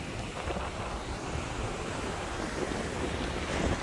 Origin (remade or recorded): recorded